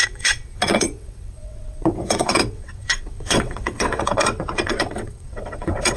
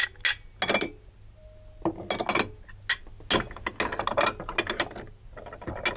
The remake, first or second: first